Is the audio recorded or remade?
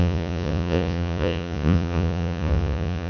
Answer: remade